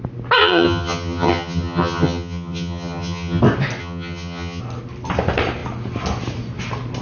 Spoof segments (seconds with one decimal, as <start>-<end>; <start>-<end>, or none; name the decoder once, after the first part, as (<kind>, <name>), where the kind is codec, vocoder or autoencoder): 0.4-3.4 (vocoder, HiFi-GAN); 3.8-4.6